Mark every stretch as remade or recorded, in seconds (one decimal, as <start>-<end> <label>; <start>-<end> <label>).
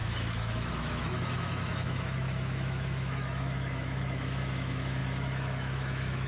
0.0-6.3 remade